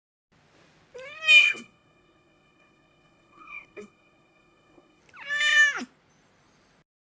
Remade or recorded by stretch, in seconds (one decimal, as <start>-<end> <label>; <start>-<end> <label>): 0.0-1.4 recorded; 1.4-5.0 remade; 5.0-7.1 recorded